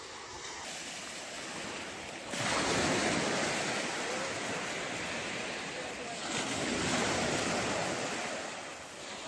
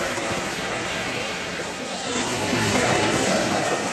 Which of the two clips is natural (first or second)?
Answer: first